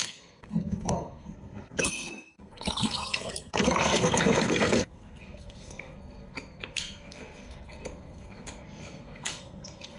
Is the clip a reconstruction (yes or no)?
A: yes